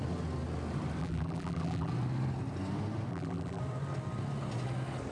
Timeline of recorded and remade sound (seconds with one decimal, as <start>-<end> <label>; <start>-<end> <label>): 0.0-1.0 recorded; 1.0-1.9 remade; 1.9-3.1 recorded; 3.1-3.6 remade; 3.6-5.1 recorded